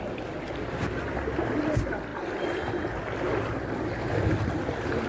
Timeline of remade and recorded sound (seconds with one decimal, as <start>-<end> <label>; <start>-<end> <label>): 0.0-5.1 recorded